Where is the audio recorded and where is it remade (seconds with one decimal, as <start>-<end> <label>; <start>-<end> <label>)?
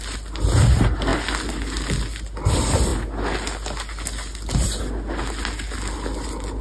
0.0-6.6 recorded